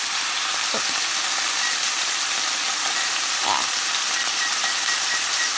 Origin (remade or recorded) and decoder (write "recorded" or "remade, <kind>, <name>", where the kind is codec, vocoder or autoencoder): recorded